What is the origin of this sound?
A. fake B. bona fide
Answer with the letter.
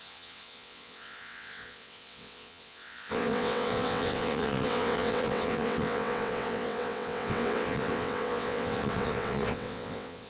A